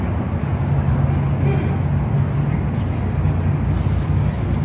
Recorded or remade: recorded